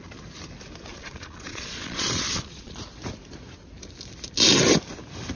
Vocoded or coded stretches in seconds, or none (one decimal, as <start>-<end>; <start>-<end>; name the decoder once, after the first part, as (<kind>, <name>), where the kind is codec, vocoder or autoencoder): 0.9-2.7 (vocoder, Vocos)